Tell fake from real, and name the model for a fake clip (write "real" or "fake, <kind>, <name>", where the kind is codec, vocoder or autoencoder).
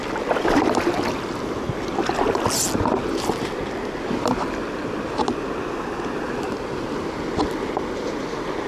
real